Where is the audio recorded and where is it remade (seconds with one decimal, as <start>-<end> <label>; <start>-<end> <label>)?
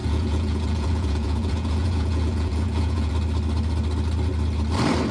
0.0-3.1 remade; 3.1-5.1 recorded